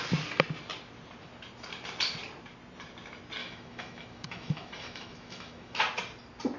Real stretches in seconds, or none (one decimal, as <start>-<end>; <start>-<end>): 0.0-3.4; 5.8-6.6